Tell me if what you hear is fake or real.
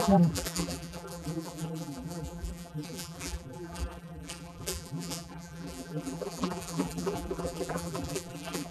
fake